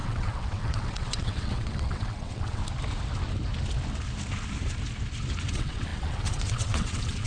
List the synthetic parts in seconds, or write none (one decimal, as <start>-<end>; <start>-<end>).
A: 0.0-2.6; 5.5-7.3